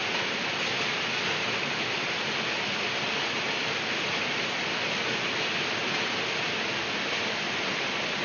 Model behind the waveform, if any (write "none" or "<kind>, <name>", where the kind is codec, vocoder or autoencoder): none